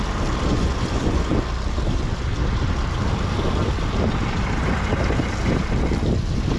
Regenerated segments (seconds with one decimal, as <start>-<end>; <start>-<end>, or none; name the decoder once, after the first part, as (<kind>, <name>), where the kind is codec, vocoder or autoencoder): 0.5-1.3 (vocoder, Vocos)

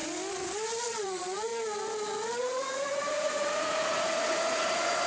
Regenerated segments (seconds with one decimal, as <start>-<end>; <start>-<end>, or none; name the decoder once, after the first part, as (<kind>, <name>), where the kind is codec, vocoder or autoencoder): 0.8-1.5 (vocoder, Vocos); 2.4-5.1